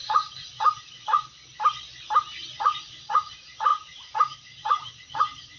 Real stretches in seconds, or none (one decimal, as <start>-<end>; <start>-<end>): 1.3-2.5